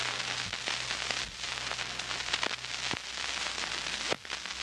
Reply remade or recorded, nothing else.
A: recorded